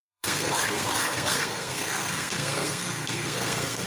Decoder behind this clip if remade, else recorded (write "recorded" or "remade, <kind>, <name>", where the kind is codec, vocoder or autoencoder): remade, codec, SNAC